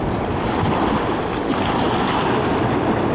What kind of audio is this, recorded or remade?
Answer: recorded